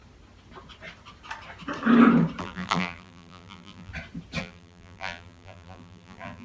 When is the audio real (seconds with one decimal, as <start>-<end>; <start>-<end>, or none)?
0.0-2.4; 3.9-4.4